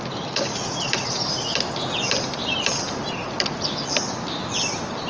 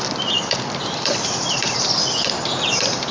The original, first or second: first